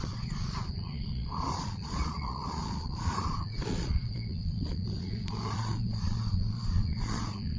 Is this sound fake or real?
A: fake